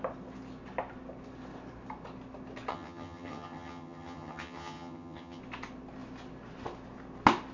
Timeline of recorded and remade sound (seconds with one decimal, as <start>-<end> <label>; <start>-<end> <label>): 0.0-2.7 recorded; 2.7-5.4 remade; 5.4-7.5 recorded

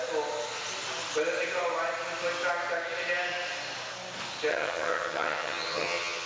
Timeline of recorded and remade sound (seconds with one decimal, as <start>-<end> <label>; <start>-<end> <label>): 0.0-4.5 recorded; 4.5-6.3 remade

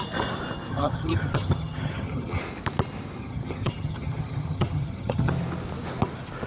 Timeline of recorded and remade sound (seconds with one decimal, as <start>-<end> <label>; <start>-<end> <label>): 0.0-0.7 recorded; 0.7-2.4 remade; 2.4-3.2 recorded; 3.2-5.3 remade; 5.3-6.5 recorded

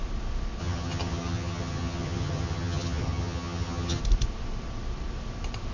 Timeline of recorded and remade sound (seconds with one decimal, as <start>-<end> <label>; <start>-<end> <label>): 0.0-0.6 recorded; 0.6-4.0 remade; 4.0-5.7 recorded

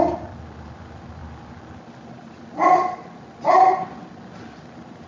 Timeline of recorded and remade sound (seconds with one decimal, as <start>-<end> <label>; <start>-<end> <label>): 0.0-5.1 recorded

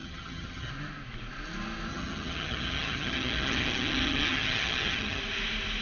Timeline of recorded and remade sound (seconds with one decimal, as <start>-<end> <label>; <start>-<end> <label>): 0.0-0.7 remade; 0.7-1.9 recorded; 1.9-5.2 remade; 5.2-5.8 recorded

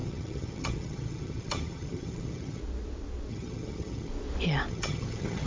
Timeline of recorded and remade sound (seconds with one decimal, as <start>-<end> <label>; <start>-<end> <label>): 0.0-2.6 remade; 2.6-3.3 recorded; 3.3-4.1 remade; 4.1-4.7 recorded; 4.7-5.5 remade

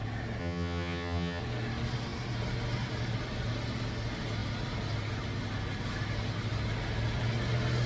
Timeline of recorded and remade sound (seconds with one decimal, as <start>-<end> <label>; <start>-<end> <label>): 0.0-0.4 recorded; 0.4-1.4 remade; 1.4-7.9 recorded